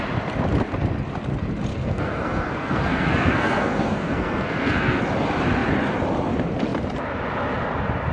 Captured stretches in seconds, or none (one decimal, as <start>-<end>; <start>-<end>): 0.0-1.7; 5.0-8.1